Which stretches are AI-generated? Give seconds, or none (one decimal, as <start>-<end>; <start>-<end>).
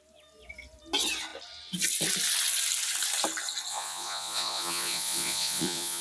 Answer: 3.7-6.0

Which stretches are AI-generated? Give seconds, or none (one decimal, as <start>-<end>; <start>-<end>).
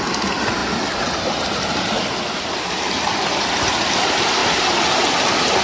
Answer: 4.4-5.0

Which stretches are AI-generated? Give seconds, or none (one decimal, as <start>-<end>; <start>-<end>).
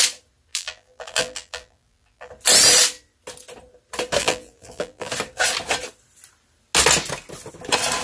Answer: 0.5-2.3; 4.2-5.1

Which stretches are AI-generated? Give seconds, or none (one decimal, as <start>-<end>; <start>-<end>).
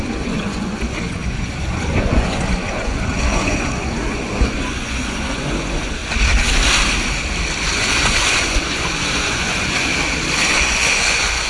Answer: 0.0-6.0; 7.6-9.9; 10.4-11.5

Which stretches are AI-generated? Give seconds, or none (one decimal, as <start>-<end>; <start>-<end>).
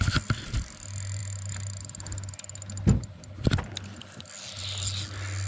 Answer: none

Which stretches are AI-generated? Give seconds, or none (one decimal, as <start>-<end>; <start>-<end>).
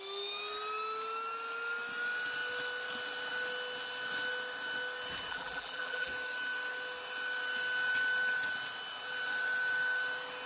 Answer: 5.3-6.1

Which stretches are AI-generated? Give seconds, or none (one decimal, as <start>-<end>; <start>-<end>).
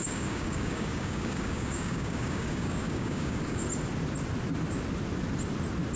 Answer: 0.0-3.6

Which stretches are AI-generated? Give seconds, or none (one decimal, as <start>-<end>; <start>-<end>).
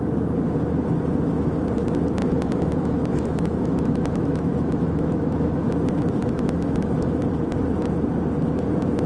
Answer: 2.2-5.8; 6.2-7.2